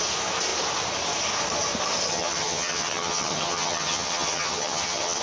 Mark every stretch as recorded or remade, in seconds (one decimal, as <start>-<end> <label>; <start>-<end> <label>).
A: 0.0-2.1 recorded; 2.1-5.2 remade

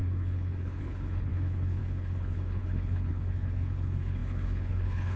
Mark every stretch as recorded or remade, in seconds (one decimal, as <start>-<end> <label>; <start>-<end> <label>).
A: 0.0-5.2 remade

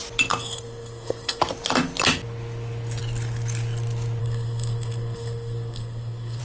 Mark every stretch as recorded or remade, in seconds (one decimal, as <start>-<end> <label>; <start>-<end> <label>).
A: 0.0-0.4 recorded; 0.4-1.4 remade; 1.4-4.2 recorded; 4.2-6.4 remade